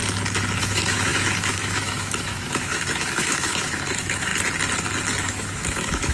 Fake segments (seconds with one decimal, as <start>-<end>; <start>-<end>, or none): 0.6-4.3; 5.2-6.1